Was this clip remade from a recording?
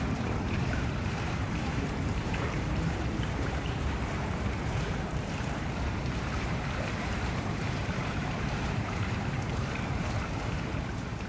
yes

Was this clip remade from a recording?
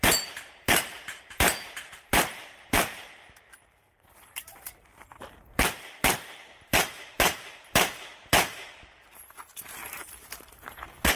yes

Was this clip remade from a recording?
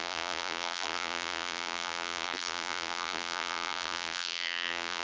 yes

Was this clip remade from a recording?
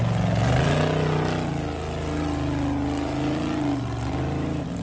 no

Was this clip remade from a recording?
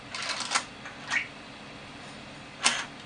no